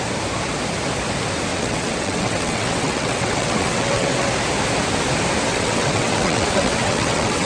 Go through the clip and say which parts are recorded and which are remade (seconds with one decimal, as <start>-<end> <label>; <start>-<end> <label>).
0.0-1.5 recorded; 1.5-4.3 remade; 4.3-5.5 recorded; 5.5-7.5 remade